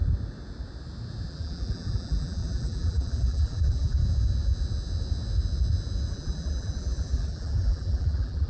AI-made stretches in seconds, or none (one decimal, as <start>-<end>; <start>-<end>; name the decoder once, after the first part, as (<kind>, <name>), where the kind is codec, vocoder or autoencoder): 1.3-4.0 (vocoder, BigVGAN v2); 6.1-8.5